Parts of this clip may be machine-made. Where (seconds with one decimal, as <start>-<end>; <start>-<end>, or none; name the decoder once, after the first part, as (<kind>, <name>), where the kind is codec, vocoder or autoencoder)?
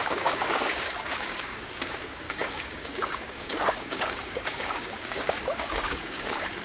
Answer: 0.0-6.6 (codec, DAC)